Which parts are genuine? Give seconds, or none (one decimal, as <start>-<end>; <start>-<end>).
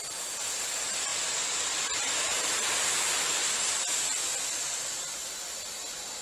0.0-1.1; 4.5-6.2